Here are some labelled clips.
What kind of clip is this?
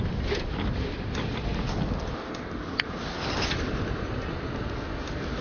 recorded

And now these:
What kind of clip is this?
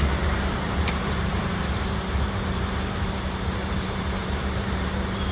remade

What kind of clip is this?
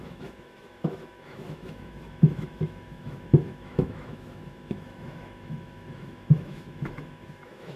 remade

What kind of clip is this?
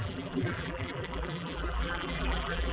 remade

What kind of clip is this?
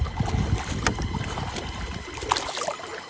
recorded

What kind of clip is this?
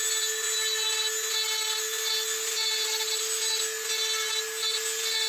recorded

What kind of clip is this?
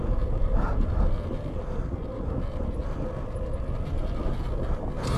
recorded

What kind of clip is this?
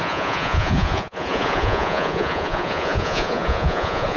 remade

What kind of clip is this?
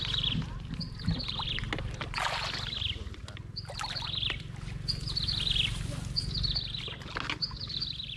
recorded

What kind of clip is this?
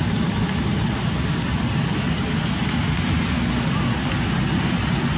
recorded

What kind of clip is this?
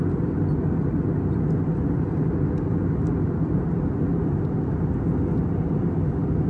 recorded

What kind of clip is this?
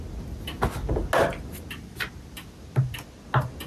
recorded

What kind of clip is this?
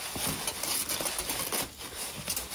recorded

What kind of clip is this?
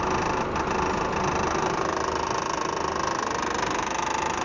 recorded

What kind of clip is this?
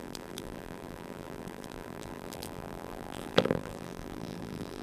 remade